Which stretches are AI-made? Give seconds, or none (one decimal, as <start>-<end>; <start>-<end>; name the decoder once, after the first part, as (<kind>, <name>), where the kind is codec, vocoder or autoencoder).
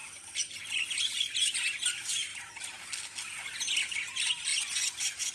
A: 4.5-5.3 (vocoder, Vocos)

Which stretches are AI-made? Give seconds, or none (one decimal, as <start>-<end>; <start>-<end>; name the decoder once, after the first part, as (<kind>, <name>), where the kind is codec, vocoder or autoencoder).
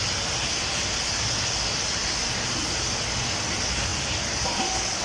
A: none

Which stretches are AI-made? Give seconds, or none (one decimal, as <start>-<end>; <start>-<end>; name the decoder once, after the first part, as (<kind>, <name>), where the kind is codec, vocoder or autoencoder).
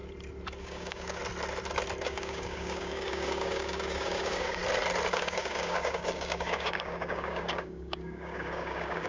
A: 0.6-1.2 (codec, DAC); 2.0-4.6; 5.1-9.1